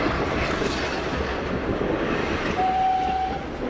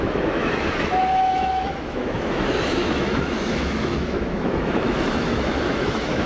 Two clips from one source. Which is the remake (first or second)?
second